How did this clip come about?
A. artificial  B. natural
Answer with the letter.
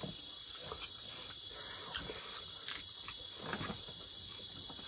B